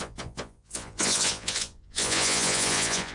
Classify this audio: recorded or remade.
remade